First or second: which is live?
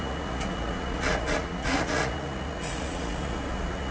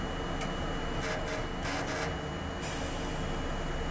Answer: second